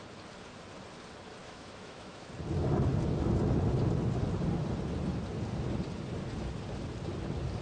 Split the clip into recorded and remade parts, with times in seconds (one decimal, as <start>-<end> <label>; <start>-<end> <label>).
0.0-1.4 recorded; 1.4-2.3 remade; 2.3-7.6 recorded

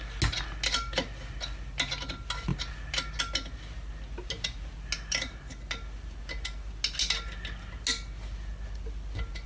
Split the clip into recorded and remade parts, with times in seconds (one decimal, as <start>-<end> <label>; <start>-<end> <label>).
0.0-9.5 recorded

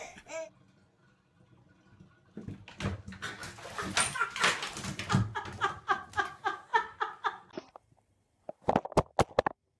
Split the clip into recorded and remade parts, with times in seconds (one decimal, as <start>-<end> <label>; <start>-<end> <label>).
0.0-9.8 recorded

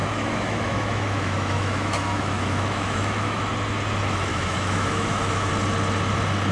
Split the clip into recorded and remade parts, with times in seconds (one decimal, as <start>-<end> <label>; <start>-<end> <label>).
0.0-3.5 remade; 3.5-4.3 recorded; 4.3-5.5 remade; 5.5-6.5 recorded

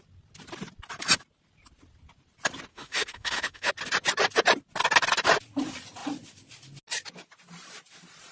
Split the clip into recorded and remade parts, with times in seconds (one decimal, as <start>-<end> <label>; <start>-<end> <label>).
0.0-2.7 recorded; 2.7-3.7 remade; 3.7-8.3 recorded

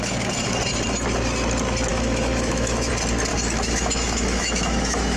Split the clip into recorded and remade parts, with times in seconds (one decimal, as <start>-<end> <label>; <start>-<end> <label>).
0.0-1.9 recorded; 1.9-2.9 remade; 2.9-3.3 recorded; 3.3-5.2 remade

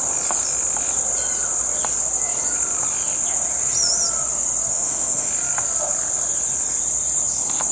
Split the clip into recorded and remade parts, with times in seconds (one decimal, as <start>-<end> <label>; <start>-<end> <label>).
0.0-4.7 recorded; 4.7-5.3 remade; 5.3-7.7 recorded